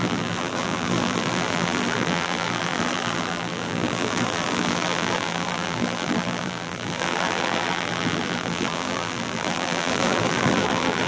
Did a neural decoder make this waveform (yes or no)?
yes